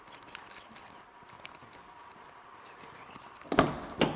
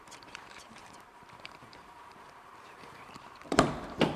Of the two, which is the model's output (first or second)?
second